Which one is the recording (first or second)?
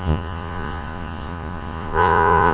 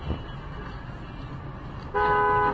second